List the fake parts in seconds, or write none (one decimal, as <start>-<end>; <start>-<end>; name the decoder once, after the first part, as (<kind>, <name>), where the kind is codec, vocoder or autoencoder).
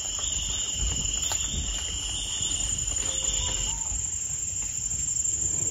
none